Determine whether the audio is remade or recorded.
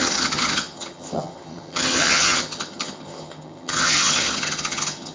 remade